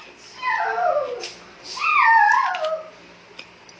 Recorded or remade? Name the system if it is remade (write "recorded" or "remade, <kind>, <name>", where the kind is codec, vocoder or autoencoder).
recorded